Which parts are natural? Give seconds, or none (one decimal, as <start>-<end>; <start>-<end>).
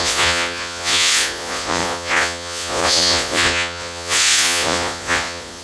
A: none